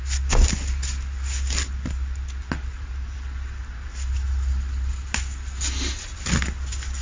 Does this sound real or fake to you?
real